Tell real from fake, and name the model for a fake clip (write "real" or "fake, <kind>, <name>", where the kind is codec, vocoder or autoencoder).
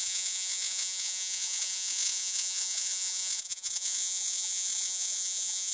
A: fake, vocoder, Vocos